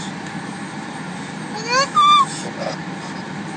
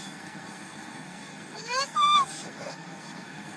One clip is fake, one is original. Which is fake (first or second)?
second